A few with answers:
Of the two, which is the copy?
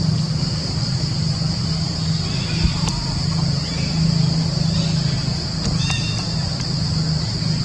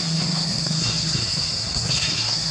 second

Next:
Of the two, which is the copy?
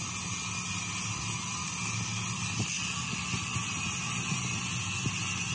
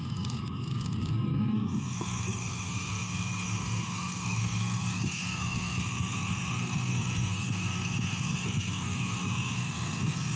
second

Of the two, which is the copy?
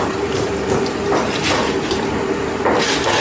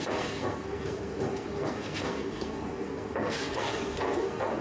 second